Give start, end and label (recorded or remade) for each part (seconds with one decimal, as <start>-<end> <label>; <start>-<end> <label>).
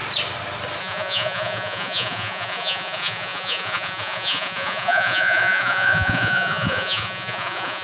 0.0-0.8 recorded; 0.8-7.8 remade